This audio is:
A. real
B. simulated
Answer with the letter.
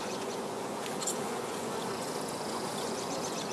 B